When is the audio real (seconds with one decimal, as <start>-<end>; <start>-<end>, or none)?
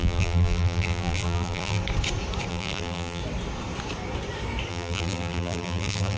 1.8-2.5; 3.2-4.7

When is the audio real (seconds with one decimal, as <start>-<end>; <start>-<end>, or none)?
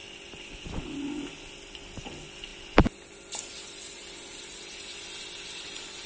0.0-6.1